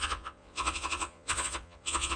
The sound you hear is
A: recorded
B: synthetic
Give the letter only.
B